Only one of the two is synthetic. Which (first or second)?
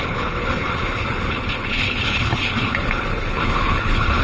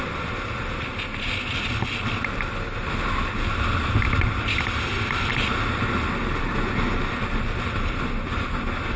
first